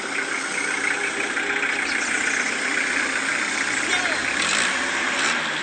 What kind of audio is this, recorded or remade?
recorded